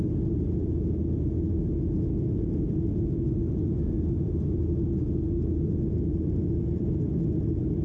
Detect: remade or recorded recorded